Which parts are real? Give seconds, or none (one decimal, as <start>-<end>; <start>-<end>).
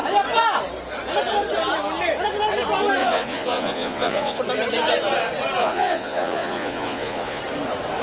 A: 0.0-3.0; 4.4-5.6; 7.4-8.0